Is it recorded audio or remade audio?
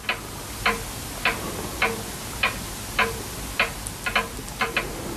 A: recorded